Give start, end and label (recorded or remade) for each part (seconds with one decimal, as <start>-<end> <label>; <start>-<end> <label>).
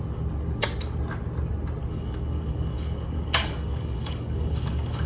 0.0-1.9 recorded; 1.9-5.1 remade